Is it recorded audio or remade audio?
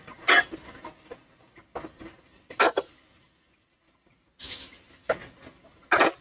recorded